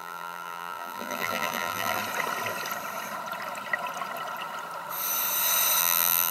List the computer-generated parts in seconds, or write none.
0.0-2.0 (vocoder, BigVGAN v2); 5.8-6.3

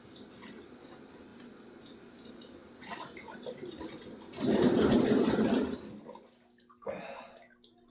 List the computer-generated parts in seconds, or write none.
none